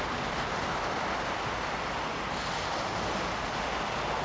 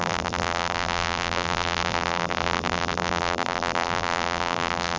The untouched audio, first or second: first